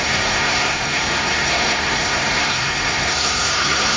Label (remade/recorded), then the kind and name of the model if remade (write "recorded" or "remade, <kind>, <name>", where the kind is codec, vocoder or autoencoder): remade, codec, SNAC